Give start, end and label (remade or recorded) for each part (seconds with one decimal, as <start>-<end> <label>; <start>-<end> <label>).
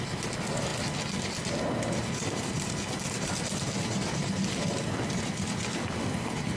0.0-6.6 recorded